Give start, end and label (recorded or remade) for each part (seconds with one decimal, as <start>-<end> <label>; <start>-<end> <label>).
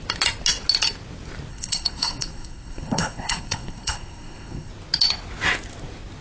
0.0-1.5 recorded; 1.5-4.7 remade; 4.7-6.2 recorded